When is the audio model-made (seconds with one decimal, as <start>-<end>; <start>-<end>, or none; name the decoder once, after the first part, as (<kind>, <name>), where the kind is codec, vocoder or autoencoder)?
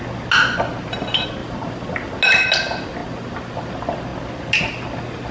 1.4-2.2 (vocoder, BigVGAN v2)